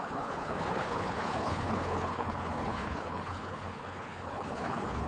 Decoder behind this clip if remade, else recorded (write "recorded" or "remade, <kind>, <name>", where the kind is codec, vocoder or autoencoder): remade, codec, HILCodec